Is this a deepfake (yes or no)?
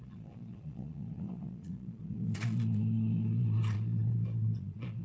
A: yes